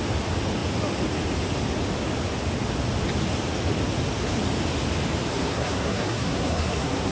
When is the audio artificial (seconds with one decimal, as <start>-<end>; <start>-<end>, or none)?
5.3-7.1